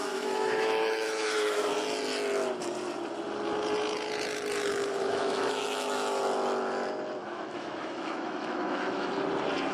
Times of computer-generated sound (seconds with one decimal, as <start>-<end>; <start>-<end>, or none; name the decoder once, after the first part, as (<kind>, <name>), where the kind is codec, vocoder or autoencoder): 0.0-1.7 (autoencoder, DAC-VAE); 4.7-6.2; 7.2-9.1

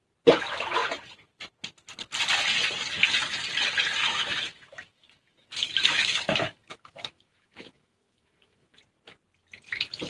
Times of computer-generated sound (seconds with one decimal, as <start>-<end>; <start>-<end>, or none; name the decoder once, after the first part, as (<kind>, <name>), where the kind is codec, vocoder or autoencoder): 4.0-8.8 (autoencoder, DAC-VAE)

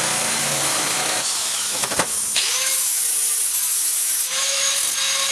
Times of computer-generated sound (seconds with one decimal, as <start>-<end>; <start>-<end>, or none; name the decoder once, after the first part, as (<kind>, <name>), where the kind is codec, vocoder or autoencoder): 0.4-3.0 (autoencoder, DAC-VAE); 3.7-4.7

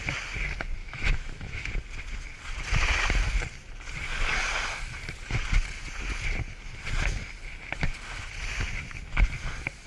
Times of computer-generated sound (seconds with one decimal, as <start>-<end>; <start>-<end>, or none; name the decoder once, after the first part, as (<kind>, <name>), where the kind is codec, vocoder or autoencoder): 0.8-1.7 (autoencoder, DAC-VAE)